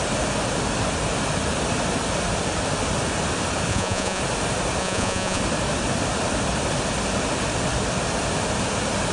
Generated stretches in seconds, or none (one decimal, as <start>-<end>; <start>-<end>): 3.7-4.2; 4.8-5.4